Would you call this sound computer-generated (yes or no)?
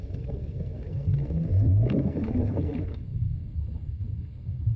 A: yes